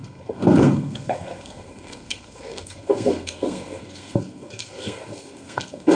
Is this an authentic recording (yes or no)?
no